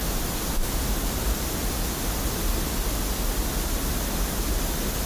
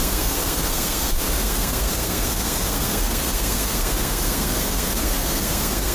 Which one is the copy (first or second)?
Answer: second